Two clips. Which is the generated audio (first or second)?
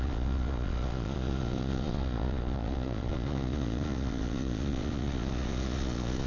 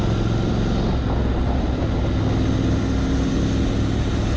first